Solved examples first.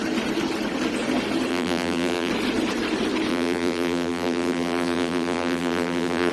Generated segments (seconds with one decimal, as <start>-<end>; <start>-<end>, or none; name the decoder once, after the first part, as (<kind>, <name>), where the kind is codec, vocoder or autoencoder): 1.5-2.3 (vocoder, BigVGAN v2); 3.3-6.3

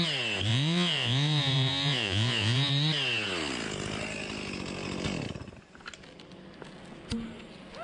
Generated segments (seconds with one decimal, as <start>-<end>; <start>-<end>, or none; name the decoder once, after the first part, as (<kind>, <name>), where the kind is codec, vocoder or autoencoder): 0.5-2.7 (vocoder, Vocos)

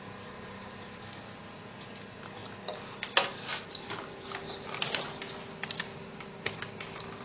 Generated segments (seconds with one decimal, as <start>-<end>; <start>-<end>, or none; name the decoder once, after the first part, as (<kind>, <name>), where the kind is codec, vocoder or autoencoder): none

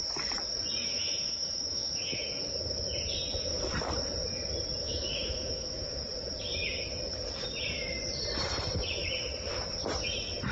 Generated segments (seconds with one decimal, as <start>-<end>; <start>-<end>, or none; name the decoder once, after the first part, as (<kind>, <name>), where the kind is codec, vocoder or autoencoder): 0.8-2.4 (autoencoder, DAC-VAE); 4.8-6.0

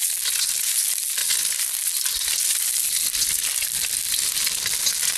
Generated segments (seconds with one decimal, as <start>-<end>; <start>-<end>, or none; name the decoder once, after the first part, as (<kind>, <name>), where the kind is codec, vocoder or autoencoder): none

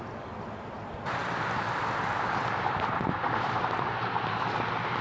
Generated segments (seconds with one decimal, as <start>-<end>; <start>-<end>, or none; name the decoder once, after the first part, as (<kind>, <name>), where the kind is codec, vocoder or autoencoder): none

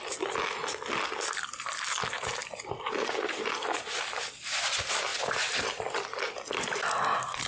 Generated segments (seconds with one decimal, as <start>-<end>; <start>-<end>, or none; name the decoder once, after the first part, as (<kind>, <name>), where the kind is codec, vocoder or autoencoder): none

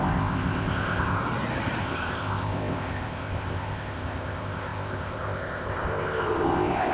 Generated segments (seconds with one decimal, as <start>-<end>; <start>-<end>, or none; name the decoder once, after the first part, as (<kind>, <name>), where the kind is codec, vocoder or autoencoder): 0.0-1.2 (codec, ZipCodec); 1.8-6.9